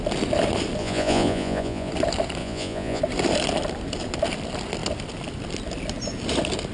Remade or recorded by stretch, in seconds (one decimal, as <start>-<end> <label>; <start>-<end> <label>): 0.0-0.8 recorded; 0.8-1.9 remade; 1.9-2.4 recorded; 2.4-3.0 remade; 3.0-6.7 recorded